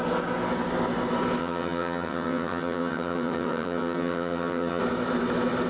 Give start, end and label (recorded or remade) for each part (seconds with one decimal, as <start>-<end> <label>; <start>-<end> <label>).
0.0-1.4 recorded; 1.4-4.8 remade; 4.8-5.7 recorded